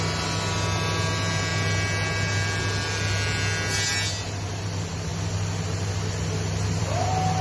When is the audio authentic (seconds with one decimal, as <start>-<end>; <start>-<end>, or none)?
0.0-7.4